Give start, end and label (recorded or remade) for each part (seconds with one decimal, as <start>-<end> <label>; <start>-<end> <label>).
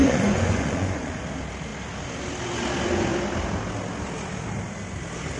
0.0-1.2 remade; 1.2-5.4 recorded